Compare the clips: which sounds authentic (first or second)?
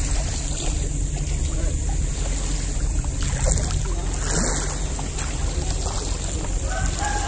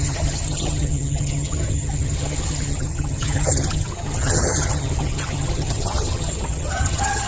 first